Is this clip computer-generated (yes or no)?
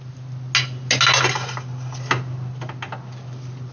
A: no